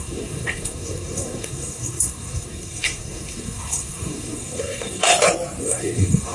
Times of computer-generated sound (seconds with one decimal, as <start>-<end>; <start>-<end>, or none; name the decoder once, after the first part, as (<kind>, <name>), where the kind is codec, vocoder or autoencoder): 0.0-5.1 (codec, SNAC); 5.6-6.3